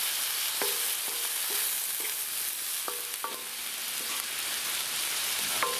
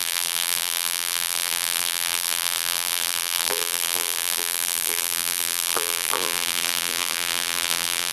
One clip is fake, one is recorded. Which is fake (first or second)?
second